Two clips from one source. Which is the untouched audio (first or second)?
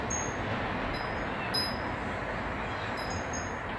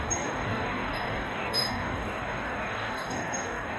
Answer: first